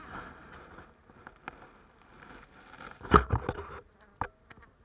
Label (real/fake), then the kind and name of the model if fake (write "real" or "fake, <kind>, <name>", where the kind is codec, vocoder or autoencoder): real